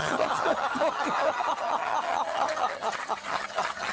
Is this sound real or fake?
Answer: fake